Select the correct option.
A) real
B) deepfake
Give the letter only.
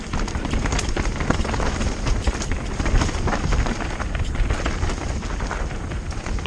B